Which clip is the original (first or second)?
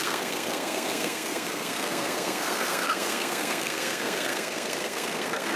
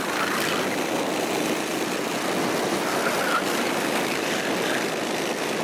second